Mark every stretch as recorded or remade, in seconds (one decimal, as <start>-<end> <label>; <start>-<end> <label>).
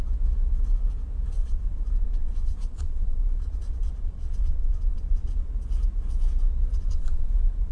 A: 0.0-1.4 recorded; 1.4-5.5 remade; 5.5-6.7 recorded; 6.7-7.7 remade